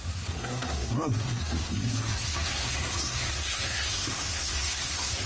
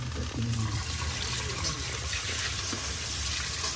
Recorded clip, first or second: second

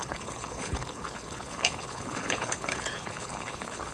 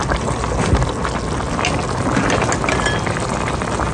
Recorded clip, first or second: second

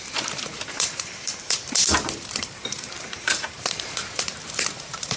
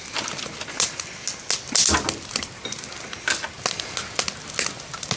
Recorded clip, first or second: second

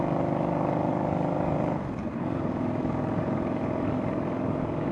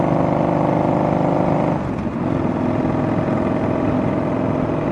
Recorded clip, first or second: second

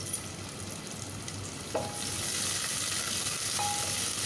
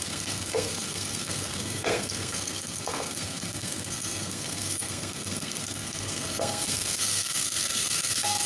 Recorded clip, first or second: first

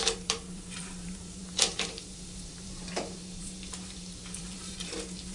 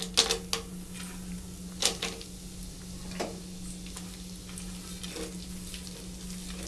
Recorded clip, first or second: second